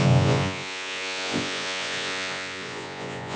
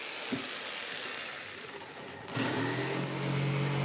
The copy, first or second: first